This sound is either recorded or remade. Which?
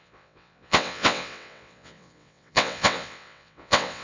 remade